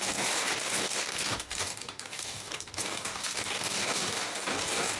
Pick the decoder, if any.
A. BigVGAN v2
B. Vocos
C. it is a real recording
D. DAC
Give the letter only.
D